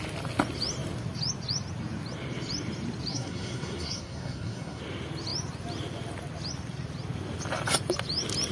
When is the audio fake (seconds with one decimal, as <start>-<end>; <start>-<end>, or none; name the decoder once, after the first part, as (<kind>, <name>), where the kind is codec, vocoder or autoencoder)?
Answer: 3.1-4.8 (codec, SNAC)